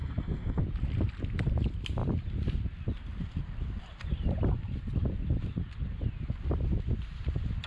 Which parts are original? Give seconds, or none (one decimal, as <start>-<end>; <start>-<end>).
0.6-7.7